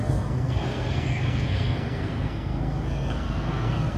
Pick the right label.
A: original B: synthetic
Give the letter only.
B